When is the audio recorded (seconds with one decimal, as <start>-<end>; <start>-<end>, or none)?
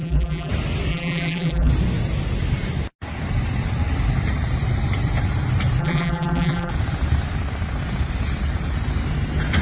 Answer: 0.5-0.9; 1.7-5.8; 6.7-9.6